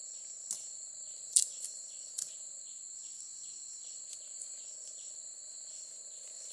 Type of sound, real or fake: real